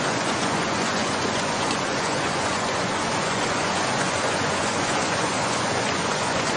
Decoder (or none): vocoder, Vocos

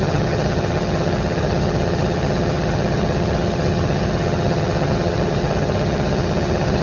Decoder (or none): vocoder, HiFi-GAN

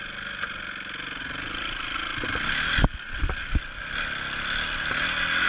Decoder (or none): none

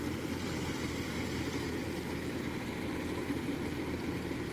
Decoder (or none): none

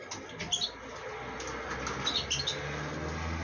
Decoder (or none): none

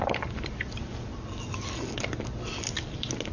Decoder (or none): none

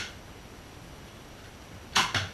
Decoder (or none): none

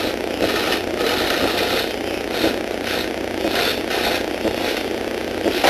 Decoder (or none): none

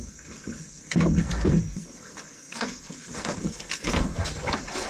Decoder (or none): codec, SNAC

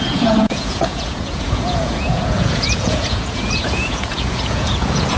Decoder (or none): vocoder, Vocos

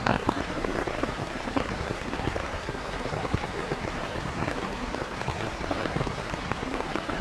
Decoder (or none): codec, SNAC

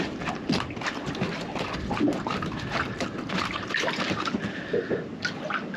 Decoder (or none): none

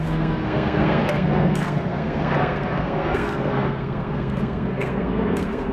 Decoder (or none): codec, SNAC